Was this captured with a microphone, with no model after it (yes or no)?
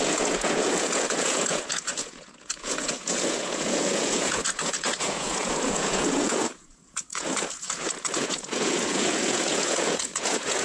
no